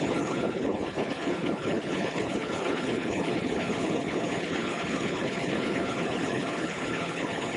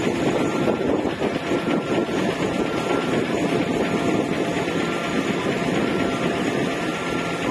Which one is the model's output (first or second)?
first